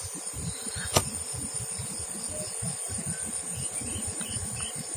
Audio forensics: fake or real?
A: real